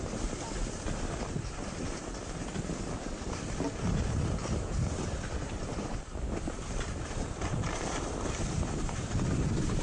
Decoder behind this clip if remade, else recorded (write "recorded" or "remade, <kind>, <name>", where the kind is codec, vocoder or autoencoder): recorded